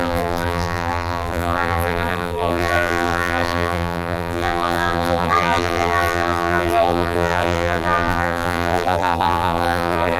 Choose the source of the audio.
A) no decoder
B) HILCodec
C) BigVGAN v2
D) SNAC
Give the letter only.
C